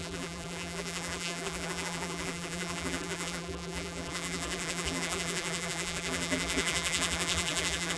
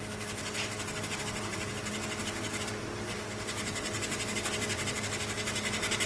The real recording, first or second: second